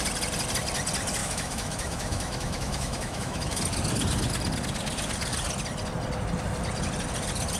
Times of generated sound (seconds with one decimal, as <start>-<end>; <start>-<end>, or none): 1.2-3.6